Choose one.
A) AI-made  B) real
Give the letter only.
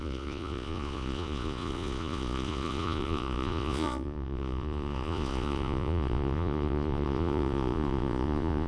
A